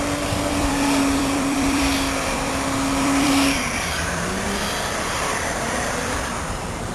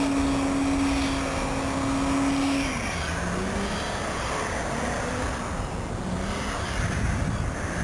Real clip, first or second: second